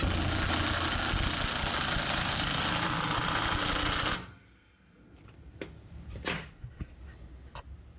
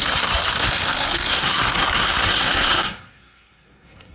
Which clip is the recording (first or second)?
first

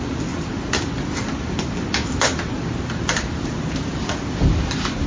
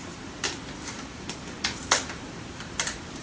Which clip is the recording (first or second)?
first